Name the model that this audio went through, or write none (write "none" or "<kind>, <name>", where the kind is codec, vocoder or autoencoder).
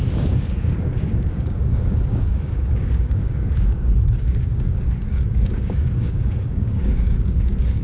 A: codec, DAC